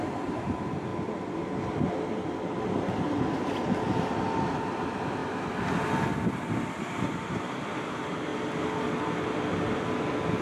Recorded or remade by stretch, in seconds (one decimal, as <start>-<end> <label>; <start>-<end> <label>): 0.0-0.9 remade; 0.9-4.5 recorded; 4.5-5.2 remade; 5.2-7.0 recorded; 7.0-8.3 remade; 8.3-10.4 recorded